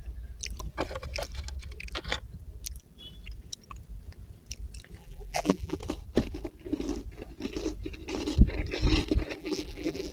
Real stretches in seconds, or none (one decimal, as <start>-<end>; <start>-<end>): 0.0-5.0; 5.8-9.4